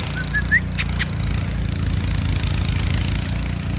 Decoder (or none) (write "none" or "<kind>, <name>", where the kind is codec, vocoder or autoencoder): none